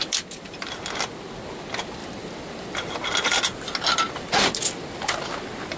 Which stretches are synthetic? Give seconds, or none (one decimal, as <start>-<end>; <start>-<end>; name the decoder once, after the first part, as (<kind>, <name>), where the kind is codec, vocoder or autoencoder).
none